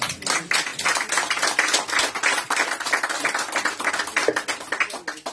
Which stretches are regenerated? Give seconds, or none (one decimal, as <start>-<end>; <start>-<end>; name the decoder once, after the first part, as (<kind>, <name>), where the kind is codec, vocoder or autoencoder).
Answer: 0.7-3.9 (vocoder, BigVGAN v2)

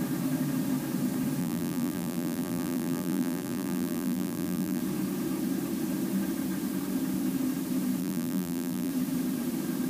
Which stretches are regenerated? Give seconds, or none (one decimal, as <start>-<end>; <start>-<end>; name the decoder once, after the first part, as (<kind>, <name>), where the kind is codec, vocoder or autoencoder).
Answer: 1.4-4.8 (vocoder, BigVGAN v2); 8.0-8.9

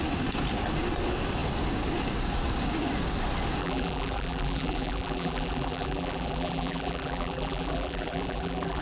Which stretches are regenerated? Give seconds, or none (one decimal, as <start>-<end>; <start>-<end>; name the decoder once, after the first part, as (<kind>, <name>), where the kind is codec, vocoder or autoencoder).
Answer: 3.6-8.8 (vocoder, BigVGAN v2)

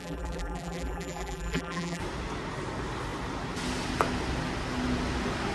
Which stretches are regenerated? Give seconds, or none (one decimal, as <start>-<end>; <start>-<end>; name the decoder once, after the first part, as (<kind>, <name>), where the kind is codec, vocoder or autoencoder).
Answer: 0.0-2.0 (vocoder, BigVGAN v2)

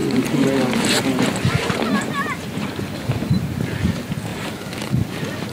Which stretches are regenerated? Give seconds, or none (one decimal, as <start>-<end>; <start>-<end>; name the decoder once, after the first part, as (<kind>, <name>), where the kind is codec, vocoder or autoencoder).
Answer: 4.3-4.9 (vocoder, BigVGAN v2)

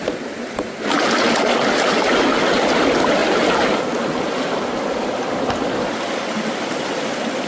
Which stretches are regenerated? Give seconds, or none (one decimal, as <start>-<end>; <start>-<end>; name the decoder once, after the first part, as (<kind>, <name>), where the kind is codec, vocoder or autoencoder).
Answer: none